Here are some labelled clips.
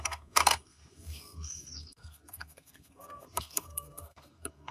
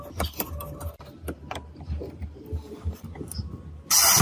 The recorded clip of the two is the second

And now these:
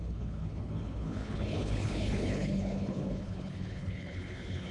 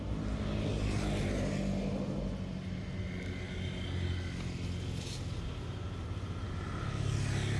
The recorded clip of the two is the second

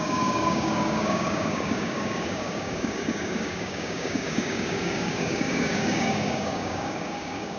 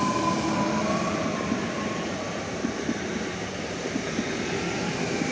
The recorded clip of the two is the second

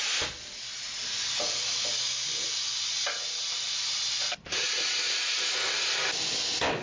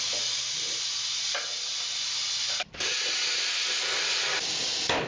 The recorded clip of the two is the first